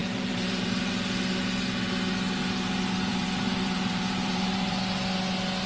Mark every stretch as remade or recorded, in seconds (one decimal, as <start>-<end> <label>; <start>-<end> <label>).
0.0-0.7 remade; 0.7-3.1 recorded; 3.1-4.8 remade; 4.8-5.7 recorded

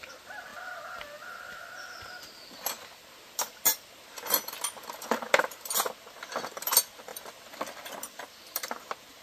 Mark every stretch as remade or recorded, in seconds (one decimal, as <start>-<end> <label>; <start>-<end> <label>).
0.0-9.2 recorded

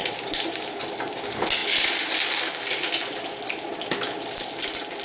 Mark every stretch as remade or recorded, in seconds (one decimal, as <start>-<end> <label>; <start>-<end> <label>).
0.0-1.2 remade; 1.2-5.0 recorded

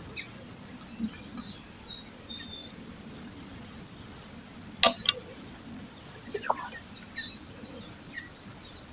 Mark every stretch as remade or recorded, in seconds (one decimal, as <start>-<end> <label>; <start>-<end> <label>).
0.0-8.9 recorded

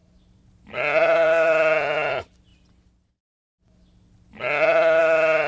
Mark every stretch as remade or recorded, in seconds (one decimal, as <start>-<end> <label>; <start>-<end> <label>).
0.0-2.1 remade; 2.1-5.5 recorded

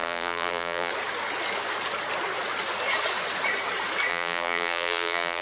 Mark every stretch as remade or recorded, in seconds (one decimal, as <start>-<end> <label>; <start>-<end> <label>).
0.0-0.9 remade; 0.9-4.1 recorded; 4.1-5.4 remade

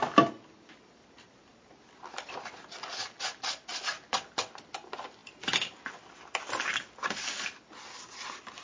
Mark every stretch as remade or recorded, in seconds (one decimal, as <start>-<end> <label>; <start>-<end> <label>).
0.0-8.6 recorded